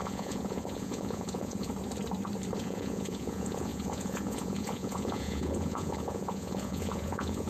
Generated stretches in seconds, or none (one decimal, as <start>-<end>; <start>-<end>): 0.0-1.7; 2.6-7.5

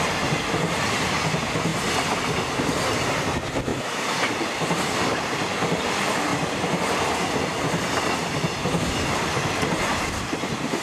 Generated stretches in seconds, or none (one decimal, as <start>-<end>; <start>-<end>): 3.7-5.8; 6.3-9.5

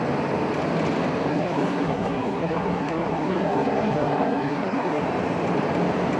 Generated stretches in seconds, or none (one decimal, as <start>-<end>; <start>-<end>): 1.3-5.0

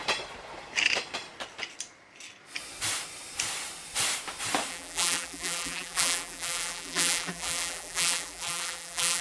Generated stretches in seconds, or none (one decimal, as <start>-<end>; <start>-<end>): 4.7-9.2

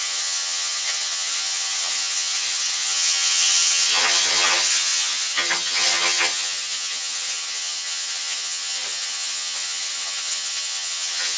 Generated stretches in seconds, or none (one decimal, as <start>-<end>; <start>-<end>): 0.0-11.4

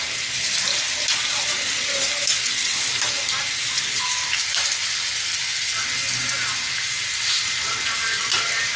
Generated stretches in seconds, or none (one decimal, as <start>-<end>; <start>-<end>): none

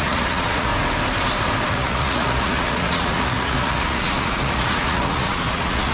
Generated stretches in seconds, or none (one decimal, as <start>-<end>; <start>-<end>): 0.0-0.7; 1.7-5.9